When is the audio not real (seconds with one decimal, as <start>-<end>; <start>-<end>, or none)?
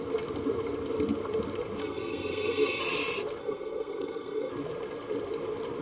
1.8-2.8; 3.4-4.5